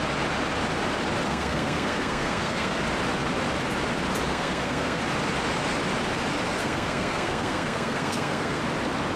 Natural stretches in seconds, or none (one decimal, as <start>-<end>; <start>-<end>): 0.0-1.3; 2.8-4.3; 5.0-6.6; 8.6-9.2